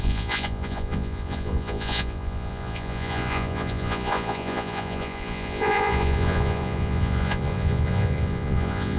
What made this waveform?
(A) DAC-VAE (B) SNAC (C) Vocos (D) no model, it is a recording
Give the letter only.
C